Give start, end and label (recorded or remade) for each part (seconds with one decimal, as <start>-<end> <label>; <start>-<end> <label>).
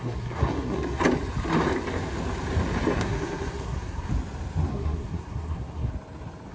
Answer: 0.0-1.0 remade; 1.0-3.0 recorded; 3.0-4.1 remade; 4.1-4.7 recorded; 4.7-5.9 remade; 5.9-6.5 recorded